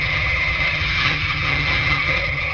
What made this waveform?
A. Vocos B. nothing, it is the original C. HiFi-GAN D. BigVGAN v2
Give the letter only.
C